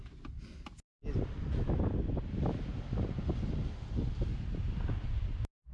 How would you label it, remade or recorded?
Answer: recorded